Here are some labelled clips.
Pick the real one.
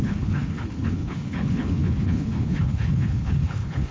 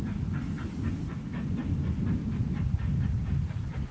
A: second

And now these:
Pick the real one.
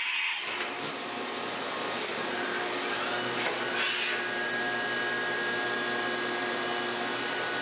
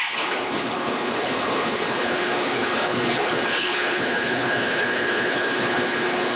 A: first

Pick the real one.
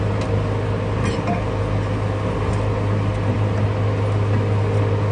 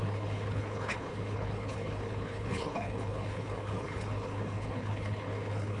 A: first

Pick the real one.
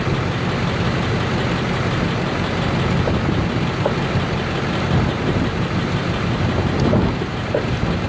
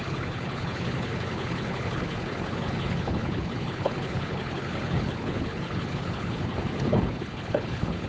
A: first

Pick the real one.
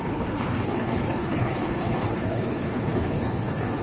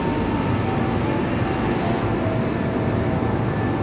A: second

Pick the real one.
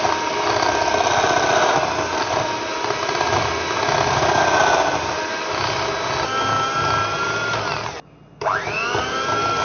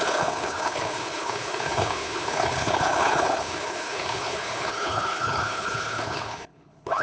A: first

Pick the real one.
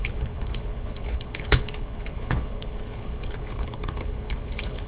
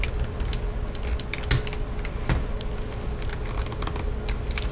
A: second